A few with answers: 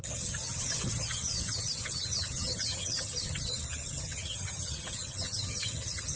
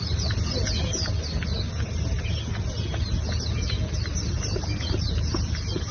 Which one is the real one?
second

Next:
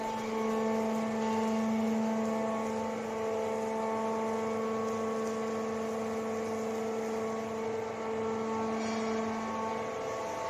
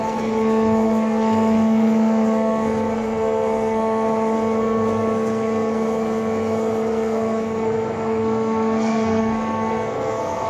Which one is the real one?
first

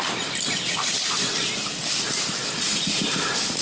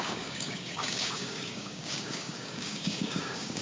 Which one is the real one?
first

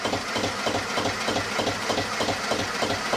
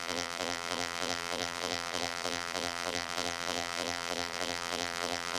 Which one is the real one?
first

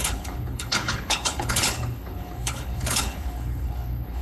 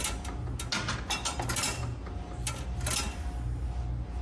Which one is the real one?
second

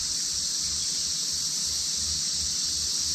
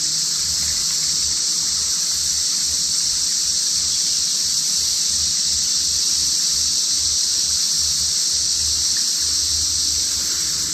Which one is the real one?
first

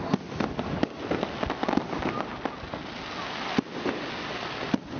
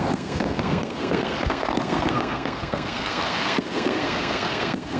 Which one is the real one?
first